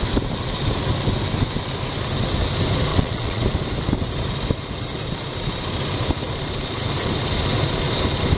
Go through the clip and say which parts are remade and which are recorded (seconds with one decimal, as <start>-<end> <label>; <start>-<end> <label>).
0.0-2.9 recorded; 2.9-3.4 remade; 3.4-8.4 recorded

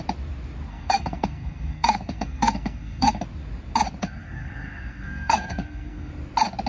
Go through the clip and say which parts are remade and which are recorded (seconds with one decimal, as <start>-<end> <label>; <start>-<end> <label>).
0.0-0.7 recorded; 0.7-3.2 remade; 3.2-4.0 recorded; 4.0-6.1 remade; 6.1-6.7 recorded